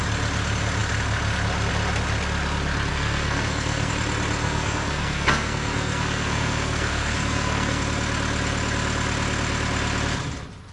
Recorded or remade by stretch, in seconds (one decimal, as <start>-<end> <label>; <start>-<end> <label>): 0.0-2.9 recorded; 2.9-3.9 remade; 3.9-4.4 recorded; 4.4-7.8 remade; 7.8-10.7 recorded